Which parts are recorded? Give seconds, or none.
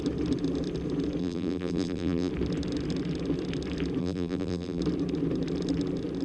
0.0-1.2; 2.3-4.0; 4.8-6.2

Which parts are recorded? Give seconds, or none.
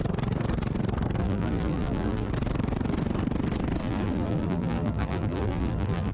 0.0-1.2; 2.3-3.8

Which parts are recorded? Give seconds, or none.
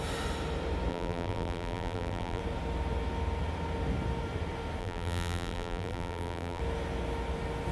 0.0-0.9; 2.4-4.8; 6.6-7.7